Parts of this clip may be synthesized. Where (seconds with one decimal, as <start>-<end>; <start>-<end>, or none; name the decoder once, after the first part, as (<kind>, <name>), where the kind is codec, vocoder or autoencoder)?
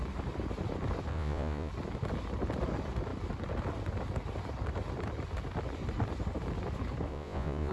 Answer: 1.1-1.7 (vocoder, Vocos); 7.1-7.7